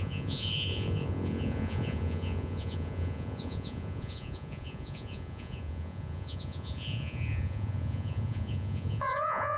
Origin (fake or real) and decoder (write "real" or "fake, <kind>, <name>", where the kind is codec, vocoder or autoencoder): fake, vocoder, Vocos